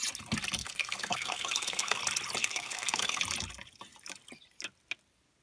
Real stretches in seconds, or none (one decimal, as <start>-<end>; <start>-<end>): 0.0-0.6; 2.0-2.4; 3.2-5.4